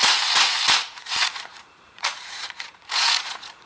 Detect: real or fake fake